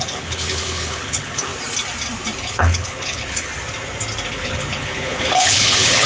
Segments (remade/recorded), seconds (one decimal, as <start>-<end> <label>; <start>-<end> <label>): 0.0-1.5 remade; 1.5-2.4 recorded; 2.4-3.5 remade; 3.5-4.3 recorded; 4.3-6.1 remade